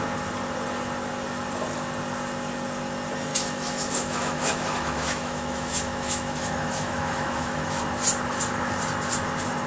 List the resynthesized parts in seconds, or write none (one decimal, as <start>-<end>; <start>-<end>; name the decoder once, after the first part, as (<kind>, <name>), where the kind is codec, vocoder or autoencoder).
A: 3.3-7.8 (autoencoder, DAC-VAE)